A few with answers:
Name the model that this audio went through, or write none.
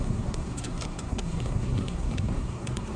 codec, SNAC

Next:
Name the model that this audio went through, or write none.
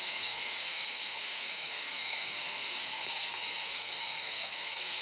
codec, SNAC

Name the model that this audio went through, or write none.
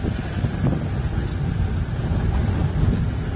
none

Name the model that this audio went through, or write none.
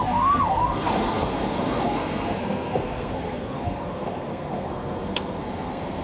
codec, SNAC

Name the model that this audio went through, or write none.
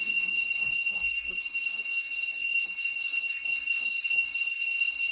codec, SNAC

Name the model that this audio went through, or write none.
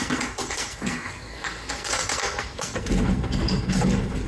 codec, SNAC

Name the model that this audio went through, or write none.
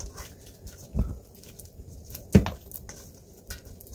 none